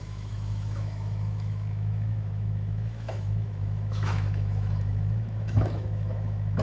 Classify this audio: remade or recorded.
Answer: remade